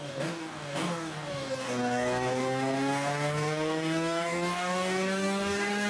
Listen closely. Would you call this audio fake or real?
fake